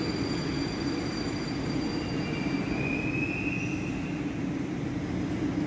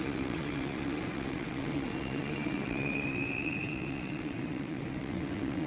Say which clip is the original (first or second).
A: first